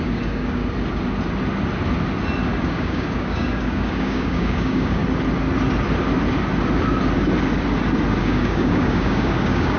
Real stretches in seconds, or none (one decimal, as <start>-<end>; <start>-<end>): 0.6-2.6; 5.0-8.2